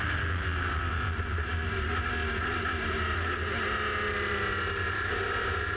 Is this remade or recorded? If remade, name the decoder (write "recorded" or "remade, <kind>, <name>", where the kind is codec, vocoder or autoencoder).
recorded